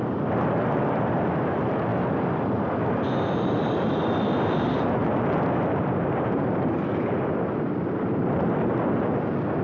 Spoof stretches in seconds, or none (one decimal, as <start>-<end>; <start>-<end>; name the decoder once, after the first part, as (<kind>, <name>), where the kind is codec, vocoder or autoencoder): none